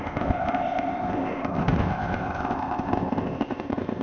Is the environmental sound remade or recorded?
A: remade